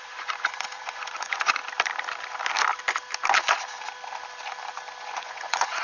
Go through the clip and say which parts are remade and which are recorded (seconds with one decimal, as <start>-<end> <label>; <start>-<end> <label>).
0.0-1.6 remade; 1.6-5.1 recorded; 5.1-5.8 remade